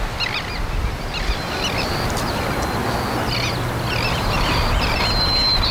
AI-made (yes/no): no